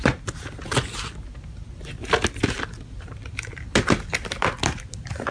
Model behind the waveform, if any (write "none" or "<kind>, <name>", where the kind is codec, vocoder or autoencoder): none